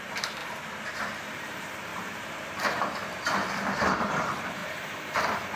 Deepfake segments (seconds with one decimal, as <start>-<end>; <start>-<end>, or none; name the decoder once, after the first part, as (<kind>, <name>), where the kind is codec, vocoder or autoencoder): 0.0-0.4 (vocoder, BigVGAN v2); 1.2-5.6